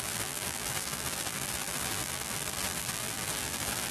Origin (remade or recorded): remade